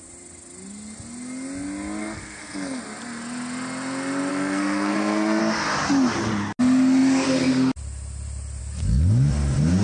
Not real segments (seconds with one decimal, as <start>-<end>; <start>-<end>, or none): 2.0-2.8; 4.3-5.4